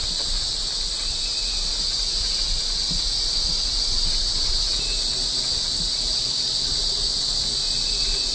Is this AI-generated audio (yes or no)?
no